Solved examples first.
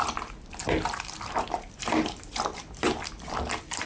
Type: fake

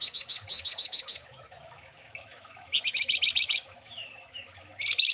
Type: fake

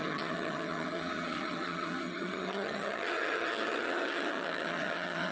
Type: fake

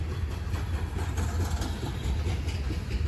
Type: real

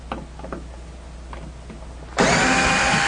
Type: real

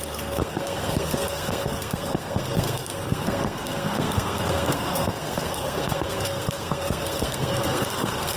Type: fake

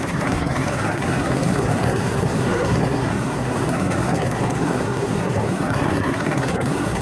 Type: fake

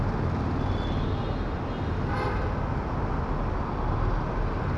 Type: real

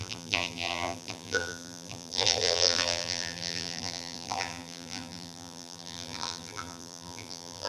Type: fake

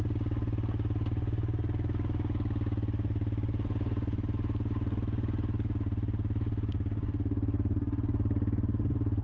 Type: real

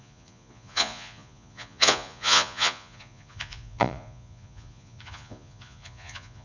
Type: fake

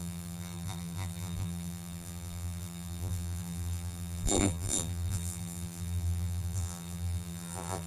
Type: fake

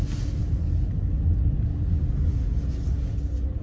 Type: real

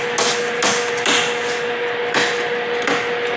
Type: real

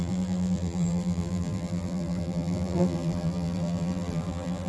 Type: fake